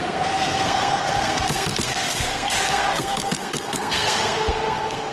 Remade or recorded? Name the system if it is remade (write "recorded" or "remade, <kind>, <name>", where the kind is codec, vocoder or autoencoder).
remade, codec, SNAC